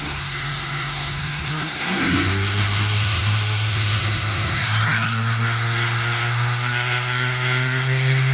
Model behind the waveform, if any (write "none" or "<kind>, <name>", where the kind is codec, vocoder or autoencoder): codec, SNAC